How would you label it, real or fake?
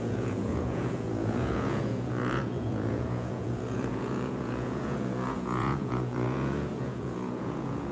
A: fake